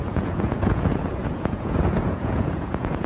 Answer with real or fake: fake